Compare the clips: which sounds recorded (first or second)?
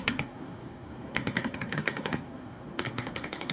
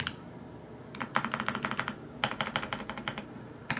second